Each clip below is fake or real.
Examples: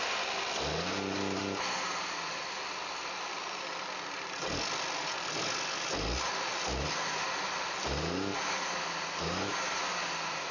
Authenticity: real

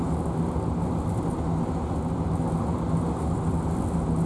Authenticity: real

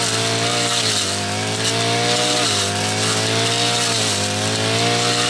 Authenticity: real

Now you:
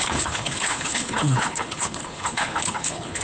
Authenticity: fake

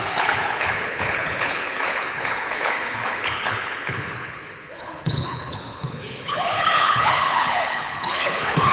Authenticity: fake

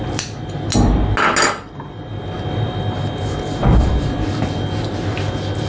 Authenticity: real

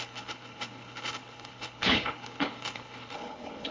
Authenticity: fake